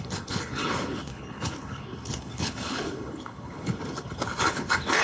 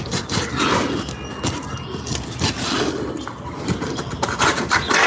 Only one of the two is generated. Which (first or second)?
first